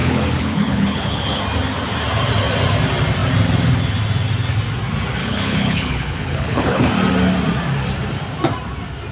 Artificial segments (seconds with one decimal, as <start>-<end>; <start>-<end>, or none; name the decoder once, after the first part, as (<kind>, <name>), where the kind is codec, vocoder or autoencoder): 0.0-1.4 (codec, HILCodec); 5.2-6.9